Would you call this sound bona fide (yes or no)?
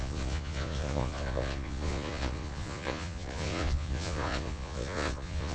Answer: no